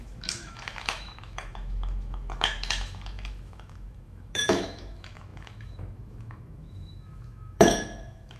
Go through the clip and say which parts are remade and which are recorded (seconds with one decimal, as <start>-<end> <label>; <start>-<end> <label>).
0.0-8.4 remade